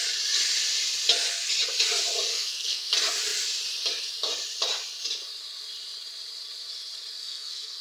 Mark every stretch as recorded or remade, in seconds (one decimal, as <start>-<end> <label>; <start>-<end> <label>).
0.0-2.3 recorded; 2.3-2.9 remade; 2.9-7.2 recorded; 7.2-7.8 remade